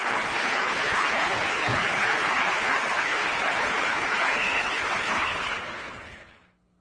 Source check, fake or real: fake